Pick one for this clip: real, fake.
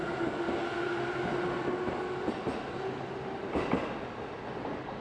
real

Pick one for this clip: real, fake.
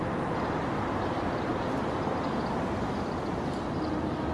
real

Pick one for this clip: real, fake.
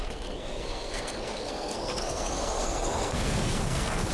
fake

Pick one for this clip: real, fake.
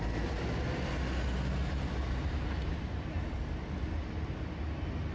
real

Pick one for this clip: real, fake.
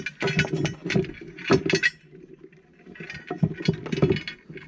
real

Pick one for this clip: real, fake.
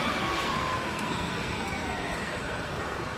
fake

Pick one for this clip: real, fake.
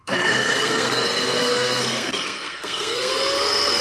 fake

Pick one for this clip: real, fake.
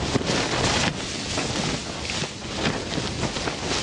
real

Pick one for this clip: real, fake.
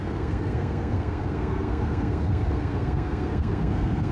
fake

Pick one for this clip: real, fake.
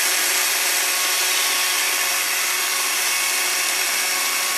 real